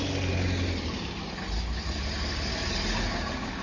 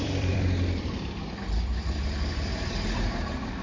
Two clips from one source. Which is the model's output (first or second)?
second